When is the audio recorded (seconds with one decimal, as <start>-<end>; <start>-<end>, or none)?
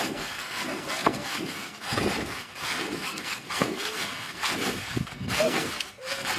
none